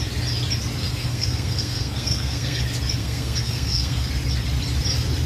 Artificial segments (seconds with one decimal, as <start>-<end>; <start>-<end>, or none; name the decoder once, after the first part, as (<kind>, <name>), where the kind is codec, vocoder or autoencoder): 0.8-2.6 (codec, SNAC); 3.0-4.1